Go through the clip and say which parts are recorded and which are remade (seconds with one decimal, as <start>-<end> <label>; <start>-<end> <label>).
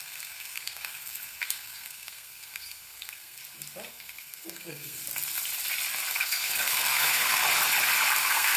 0.0-3.4 remade; 3.4-3.9 recorded; 3.9-5.0 remade; 5.0-6.1 recorded; 6.1-7.4 remade; 7.4-8.2 recorded; 8.2-8.6 remade